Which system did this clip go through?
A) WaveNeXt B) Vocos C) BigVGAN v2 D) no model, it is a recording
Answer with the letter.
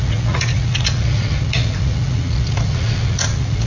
B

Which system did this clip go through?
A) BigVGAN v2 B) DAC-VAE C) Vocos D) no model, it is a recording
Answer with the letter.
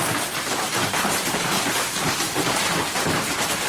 A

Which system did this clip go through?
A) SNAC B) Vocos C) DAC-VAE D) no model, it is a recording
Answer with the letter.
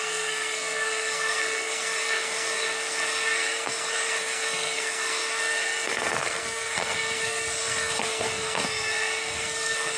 A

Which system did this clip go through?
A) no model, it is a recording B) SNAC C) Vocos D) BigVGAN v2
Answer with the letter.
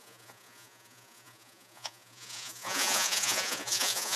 C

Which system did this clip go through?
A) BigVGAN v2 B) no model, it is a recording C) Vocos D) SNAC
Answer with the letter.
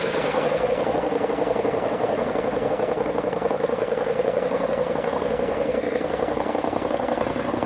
D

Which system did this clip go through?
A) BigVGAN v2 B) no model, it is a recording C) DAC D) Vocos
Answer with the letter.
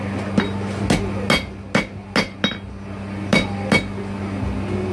B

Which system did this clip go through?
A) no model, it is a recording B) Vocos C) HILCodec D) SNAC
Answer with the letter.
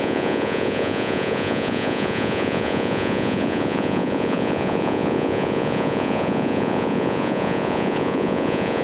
B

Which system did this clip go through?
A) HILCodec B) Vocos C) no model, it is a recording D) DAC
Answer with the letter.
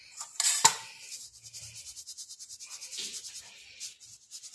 C